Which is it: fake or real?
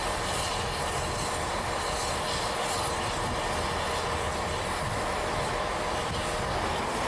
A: real